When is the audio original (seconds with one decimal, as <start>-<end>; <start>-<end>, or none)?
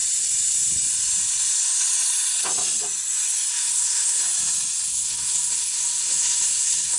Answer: 0.0-3.5; 4.2-4.9